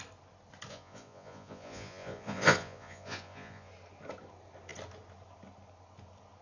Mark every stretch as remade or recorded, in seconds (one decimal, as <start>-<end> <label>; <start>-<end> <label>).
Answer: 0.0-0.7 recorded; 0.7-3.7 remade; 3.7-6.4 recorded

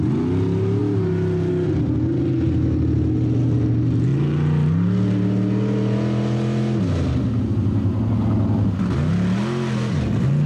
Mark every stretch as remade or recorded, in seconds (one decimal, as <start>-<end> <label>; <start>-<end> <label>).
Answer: 0.0-10.5 recorded

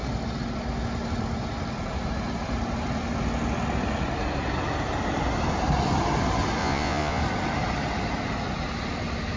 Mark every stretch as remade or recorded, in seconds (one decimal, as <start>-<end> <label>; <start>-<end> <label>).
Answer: 0.0-6.6 recorded; 6.6-7.2 remade; 7.2-9.4 recorded